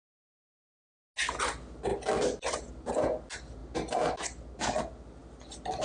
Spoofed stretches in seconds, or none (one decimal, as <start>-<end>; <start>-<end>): 1.9-2.9; 5.2-5.8

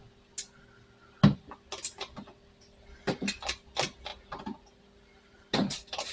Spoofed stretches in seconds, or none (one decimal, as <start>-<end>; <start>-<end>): none